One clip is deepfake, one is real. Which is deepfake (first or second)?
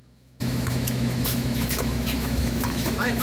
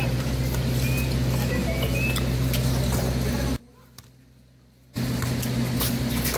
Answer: first